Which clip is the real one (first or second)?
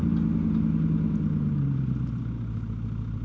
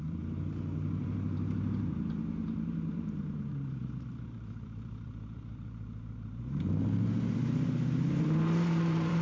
first